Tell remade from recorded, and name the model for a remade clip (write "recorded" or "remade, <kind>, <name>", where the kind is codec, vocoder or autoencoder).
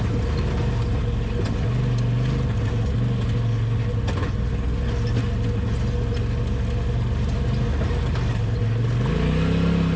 recorded